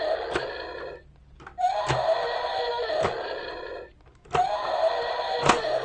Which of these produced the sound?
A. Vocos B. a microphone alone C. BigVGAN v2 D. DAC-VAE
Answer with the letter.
B